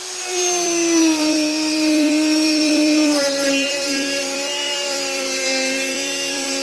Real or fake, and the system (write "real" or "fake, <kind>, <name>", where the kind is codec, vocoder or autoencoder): fake, vocoder, BigVGAN v2